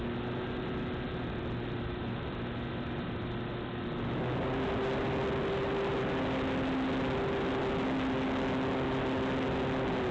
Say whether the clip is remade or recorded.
recorded